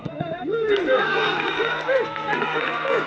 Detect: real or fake fake